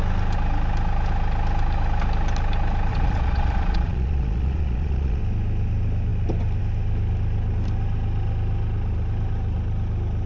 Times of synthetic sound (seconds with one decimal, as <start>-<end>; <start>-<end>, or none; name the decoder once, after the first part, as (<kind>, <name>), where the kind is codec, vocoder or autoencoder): 2.9-5.2 (vocoder, Vocos)